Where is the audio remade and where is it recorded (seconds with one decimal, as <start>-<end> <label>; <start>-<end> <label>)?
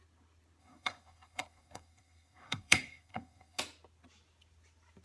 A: 0.0-0.6 recorded; 0.6-3.6 remade; 3.6-5.0 recorded